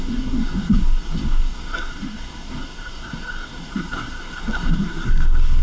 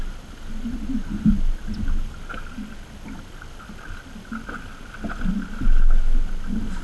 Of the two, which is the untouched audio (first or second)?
second